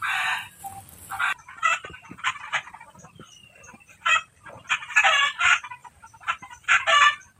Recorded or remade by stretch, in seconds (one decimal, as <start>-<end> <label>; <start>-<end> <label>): 0.0-1.7 recorded; 1.7-2.5 remade; 2.5-5.8 recorded; 5.8-6.3 remade; 6.3-7.4 recorded